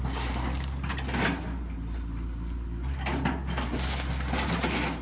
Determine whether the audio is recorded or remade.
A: recorded